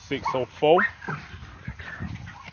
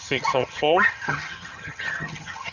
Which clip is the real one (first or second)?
first